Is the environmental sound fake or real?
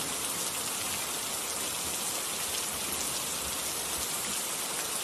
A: real